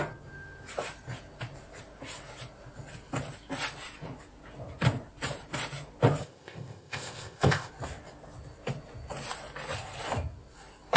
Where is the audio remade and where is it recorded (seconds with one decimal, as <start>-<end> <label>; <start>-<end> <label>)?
0.0-6.2 recorded; 6.2-7.7 remade; 7.7-11.0 recorded